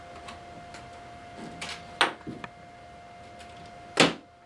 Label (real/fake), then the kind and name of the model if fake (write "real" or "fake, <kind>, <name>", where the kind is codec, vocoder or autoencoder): real